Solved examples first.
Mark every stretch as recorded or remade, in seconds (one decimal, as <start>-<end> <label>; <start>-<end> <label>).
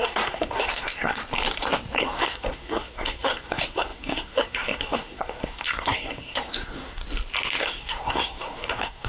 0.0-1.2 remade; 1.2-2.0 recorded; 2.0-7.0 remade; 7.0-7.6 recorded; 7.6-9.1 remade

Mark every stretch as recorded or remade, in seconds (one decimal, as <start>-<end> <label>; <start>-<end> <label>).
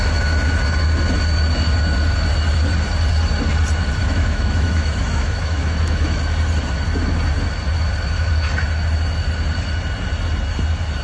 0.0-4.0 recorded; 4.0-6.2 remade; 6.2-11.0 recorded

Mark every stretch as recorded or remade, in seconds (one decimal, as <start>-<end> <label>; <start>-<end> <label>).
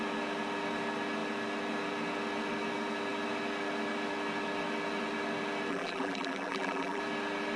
0.0-5.7 recorded; 5.7-7.0 remade; 7.0-7.6 recorded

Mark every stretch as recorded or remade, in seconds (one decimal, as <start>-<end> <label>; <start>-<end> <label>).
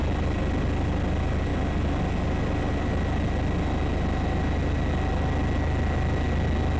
0.0-6.8 recorded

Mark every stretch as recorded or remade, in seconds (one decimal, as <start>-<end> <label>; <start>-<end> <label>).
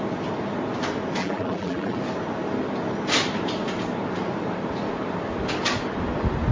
0.0-1.2 recorded; 1.2-2.0 remade; 2.0-6.5 recorded